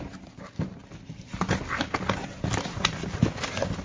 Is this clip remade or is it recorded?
recorded